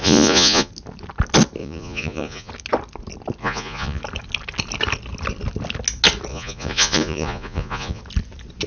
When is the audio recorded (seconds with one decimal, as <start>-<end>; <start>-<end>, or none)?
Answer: 0.7-1.6; 2.5-3.4; 4.0-6.3; 8.0-8.7